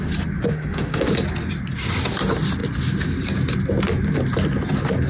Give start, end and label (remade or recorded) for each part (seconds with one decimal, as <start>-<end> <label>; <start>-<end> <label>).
0.0-0.5 recorded; 0.5-1.0 remade; 1.0-5.1 recorded